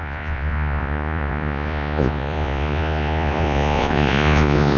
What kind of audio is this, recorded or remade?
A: remade